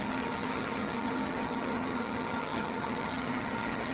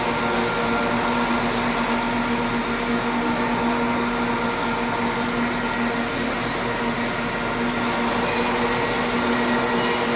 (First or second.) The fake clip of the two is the first